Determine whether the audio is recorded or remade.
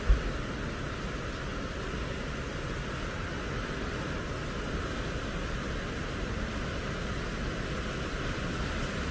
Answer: recorded